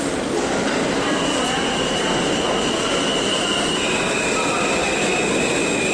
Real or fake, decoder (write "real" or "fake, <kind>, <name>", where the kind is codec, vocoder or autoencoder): real